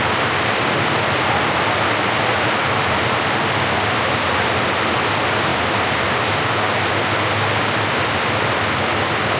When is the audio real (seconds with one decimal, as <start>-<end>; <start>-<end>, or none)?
0.0-9.4